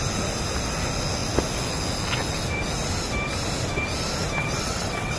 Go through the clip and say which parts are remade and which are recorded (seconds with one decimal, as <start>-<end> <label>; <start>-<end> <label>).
0.0-4.4 recorded; 4.4-5.2 remade